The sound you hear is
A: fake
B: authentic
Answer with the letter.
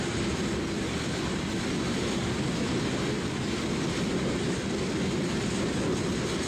B